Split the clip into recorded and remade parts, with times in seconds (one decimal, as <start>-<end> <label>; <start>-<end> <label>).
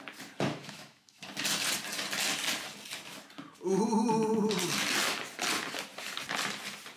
0.0-0.5 recorded; 0.5-1.2 remade; 1.2-7.0 recorded